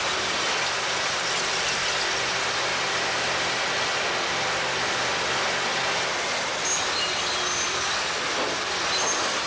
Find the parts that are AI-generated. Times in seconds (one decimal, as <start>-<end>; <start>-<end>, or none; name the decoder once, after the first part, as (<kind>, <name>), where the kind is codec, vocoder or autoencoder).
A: none